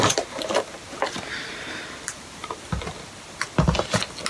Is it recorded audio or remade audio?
recorded